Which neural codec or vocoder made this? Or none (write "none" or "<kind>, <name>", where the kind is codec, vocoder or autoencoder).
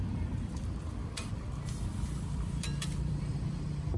vocoder, BigVGAN v2